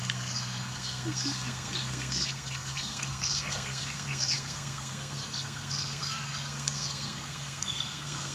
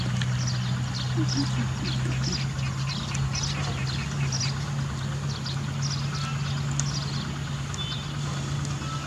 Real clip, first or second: second